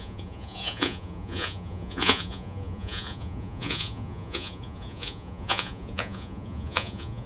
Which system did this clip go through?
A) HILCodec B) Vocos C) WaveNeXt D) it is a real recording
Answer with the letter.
B